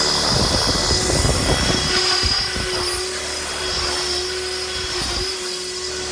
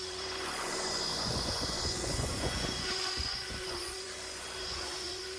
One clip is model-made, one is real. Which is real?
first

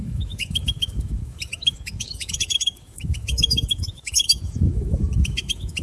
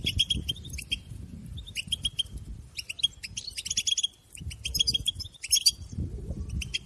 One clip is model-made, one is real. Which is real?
second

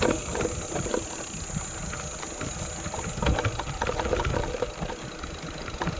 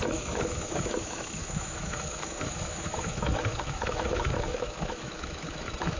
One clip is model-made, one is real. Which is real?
first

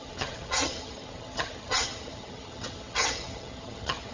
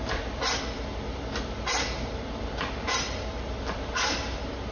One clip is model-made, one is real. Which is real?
second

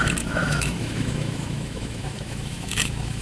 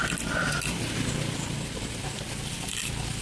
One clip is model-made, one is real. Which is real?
second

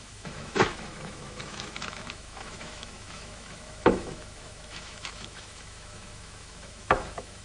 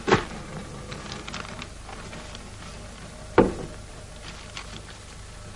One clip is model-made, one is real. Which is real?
second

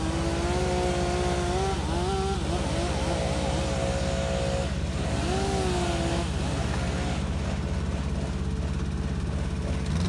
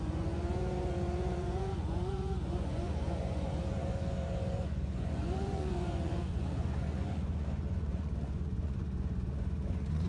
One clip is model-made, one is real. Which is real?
first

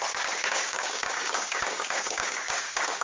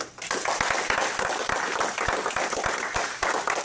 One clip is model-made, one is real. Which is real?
second